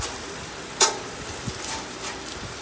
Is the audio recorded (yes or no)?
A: no